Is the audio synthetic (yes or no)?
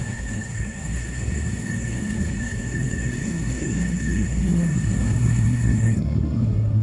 yes